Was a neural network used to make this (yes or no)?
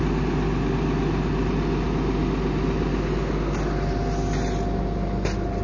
no